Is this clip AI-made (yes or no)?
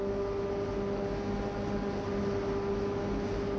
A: no